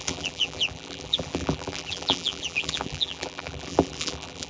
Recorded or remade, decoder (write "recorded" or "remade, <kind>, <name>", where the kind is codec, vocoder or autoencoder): remade, vocoder, BigVGAN v2